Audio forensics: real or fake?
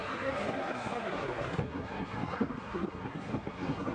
fake